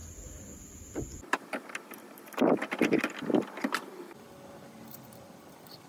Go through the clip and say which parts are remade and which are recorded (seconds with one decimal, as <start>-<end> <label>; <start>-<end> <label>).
0.0-3.0 recorded; 3.0-5.9 remade